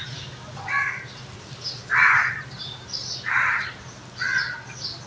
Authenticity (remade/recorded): recorded